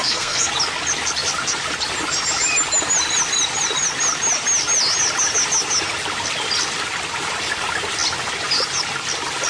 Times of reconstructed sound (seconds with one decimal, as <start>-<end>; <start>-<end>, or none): 0.0-0.5